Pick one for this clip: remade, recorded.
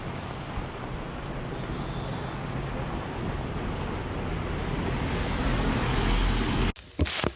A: recorded